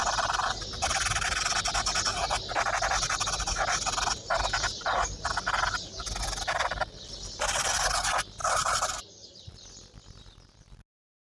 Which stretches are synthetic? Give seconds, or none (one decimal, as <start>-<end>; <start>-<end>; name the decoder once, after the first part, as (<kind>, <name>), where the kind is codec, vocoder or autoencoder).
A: 8.4-9.5 (vocoder, BigVGAN v2)